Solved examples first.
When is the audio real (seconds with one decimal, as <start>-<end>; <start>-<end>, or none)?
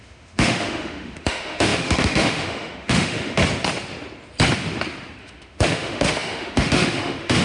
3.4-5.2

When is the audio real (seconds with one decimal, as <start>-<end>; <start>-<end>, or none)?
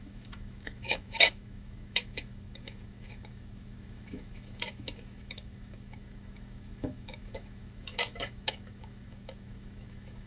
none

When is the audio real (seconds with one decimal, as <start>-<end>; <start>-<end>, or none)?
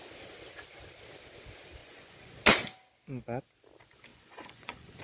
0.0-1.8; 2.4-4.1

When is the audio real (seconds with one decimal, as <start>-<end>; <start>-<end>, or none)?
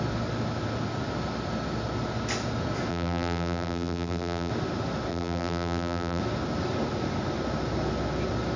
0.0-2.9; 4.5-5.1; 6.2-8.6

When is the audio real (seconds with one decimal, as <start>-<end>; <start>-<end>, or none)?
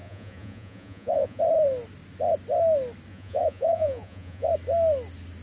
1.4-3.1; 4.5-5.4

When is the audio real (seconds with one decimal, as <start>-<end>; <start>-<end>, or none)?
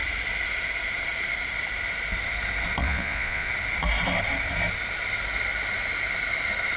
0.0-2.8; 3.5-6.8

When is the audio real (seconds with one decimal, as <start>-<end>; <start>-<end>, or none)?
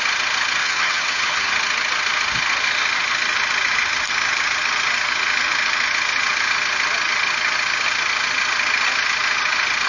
0.0-0.6; 1.5-9.9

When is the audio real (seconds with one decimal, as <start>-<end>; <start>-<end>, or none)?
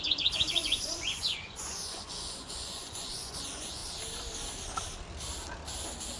3.8-6.2